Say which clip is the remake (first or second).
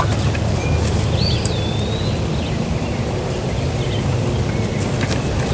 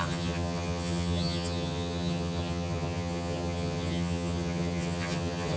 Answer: second